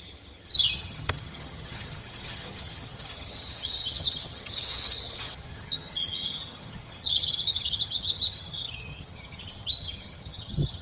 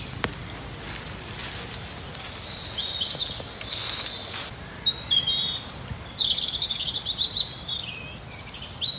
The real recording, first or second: second